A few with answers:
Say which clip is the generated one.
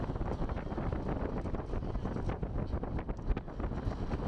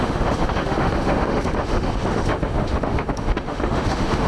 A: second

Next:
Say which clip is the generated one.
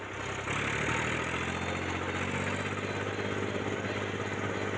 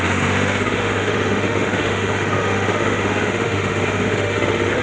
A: second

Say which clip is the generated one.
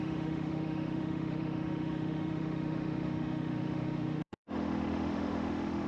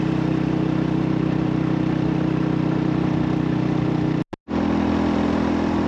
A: first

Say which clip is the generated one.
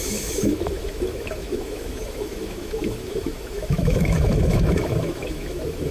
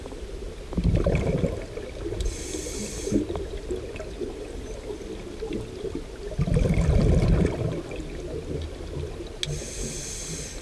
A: first